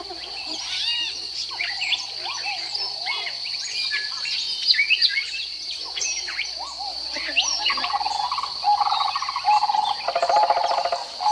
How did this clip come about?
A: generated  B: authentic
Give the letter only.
B